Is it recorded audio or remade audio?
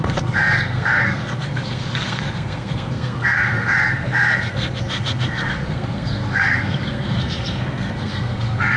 remade